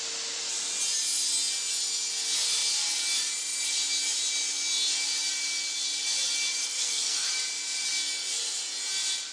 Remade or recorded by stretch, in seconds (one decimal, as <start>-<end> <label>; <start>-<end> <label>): 0.0-6.6 recorded; 6.6-7.3 remade; 7.3-9.3 recorded